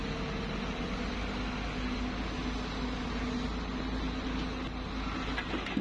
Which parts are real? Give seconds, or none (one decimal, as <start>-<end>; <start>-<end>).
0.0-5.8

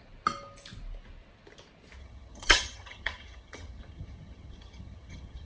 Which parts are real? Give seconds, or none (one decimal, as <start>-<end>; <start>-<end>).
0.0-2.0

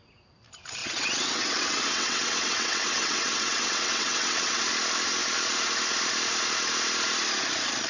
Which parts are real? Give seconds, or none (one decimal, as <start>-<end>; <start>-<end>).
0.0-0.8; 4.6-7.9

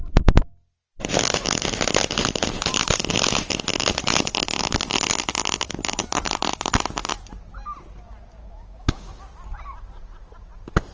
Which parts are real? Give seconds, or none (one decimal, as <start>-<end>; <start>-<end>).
0.0-8.4; 9.2-10.9

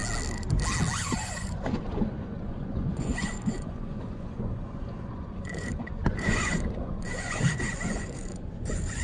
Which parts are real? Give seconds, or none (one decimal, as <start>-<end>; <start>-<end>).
0.0-1.0

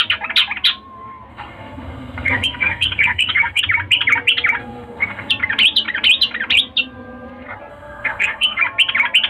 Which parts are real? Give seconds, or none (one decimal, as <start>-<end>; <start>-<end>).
0.0-1.3; 3.6-4.6; 5.3-7.7; 8.6-9.3